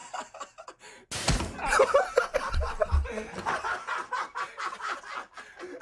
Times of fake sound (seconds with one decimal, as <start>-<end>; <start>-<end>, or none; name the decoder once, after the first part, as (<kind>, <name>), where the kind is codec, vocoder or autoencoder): none